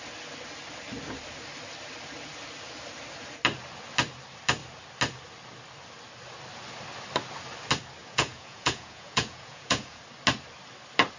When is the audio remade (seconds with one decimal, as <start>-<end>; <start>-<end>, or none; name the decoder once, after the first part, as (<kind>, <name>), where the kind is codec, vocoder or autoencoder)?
8.0-10.0 (vocoder, Vocos)